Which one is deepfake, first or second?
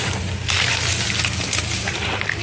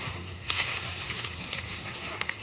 second